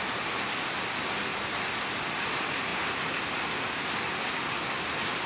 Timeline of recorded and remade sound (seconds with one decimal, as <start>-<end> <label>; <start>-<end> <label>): 0.0-5.3 recorded